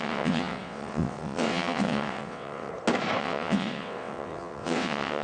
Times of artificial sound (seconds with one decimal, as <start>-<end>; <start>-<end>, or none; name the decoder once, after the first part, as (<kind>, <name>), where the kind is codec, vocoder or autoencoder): 0.0-2.7 (vocoder, WaveNeXt); 3.2-5.2